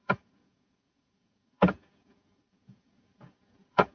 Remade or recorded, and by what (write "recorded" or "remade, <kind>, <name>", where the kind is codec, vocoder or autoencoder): remade, vocoder, Vocos